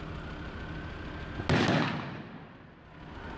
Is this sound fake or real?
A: real